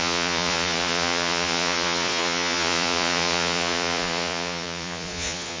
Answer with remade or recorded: remade